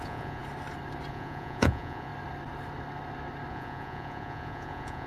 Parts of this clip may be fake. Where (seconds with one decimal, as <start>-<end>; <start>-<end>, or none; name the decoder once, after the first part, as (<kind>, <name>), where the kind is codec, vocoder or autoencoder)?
0.0-0.4 (vocoder, Vocos); 1.1-2.1; 3.5-5.1